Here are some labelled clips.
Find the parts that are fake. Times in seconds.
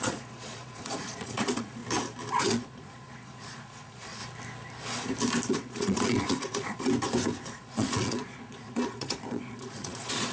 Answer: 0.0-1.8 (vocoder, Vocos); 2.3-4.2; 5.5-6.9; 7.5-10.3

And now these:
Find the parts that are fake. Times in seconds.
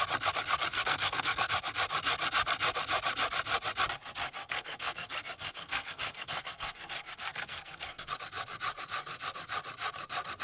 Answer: 0.7-1.5 (codec, SNAC); 4.4-8.1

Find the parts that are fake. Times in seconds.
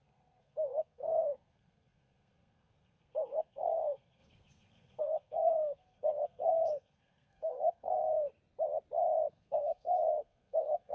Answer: 0.0-8.3 (codec, SNAC); 9.3-10.9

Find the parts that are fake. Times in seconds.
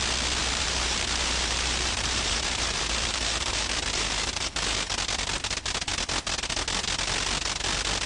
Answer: 0.4-4.9 (vocoder, BigVGAN v2)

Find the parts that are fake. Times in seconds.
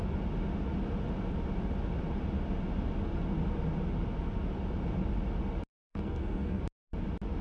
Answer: 5.7-6.6 (codec, SNAC)